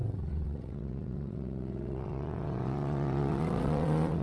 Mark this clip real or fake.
fake